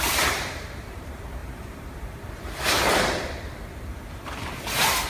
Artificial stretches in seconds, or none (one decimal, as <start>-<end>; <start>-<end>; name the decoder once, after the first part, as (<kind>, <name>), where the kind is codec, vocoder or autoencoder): 0.0-5.1 (vocoder, BigVGAN v2)